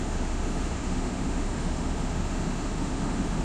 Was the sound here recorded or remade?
remade